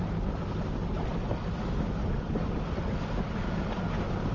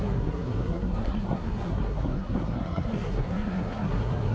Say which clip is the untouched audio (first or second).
first